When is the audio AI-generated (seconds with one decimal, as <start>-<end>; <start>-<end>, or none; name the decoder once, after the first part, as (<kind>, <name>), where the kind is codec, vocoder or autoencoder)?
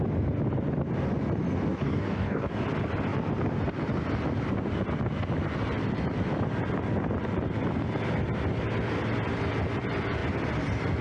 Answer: 1.7-2.6 (codec, DAC)